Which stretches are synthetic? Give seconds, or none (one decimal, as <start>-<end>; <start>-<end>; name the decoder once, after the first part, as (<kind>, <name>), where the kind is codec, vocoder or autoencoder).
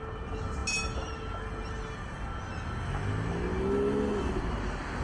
none